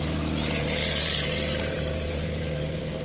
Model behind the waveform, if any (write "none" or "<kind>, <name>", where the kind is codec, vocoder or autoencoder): vocoder, BigVGAN v2